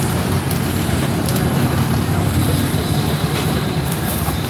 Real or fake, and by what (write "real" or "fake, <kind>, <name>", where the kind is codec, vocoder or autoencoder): fake, vocoder, BigVGAN v2